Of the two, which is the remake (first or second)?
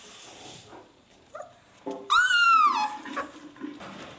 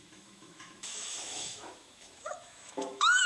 second